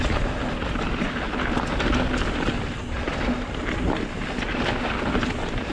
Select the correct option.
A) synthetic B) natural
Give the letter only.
B